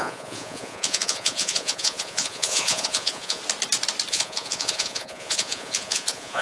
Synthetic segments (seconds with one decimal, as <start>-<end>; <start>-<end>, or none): 0.0-3.4; 4.1-6.4